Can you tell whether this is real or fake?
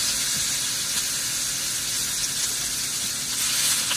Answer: real